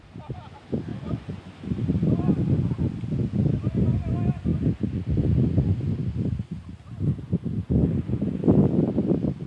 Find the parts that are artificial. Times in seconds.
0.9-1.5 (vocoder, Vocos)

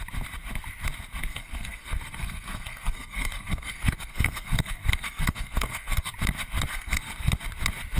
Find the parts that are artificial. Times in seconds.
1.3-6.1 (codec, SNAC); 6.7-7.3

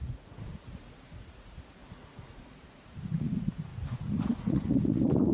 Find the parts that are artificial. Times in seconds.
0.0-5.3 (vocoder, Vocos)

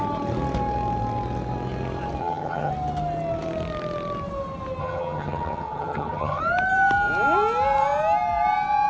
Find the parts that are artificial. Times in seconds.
2.2-2.7 (vocoder, HiFi-GAN); 4.8-6.4

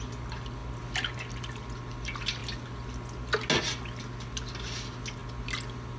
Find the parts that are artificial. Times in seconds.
none

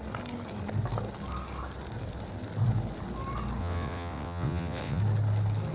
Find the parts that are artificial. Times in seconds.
3.6-5.0 (vocoder, WaveNeXt)

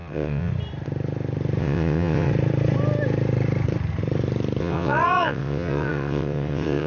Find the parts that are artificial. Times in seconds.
0.0-0.5 (vocoder, WaveNeXt); 1.6-2.3; 4.6-6.9

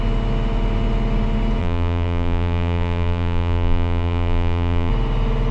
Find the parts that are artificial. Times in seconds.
1.6-4.9 (vocoder, BigVGAN v2)